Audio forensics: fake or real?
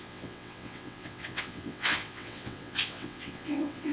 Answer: fake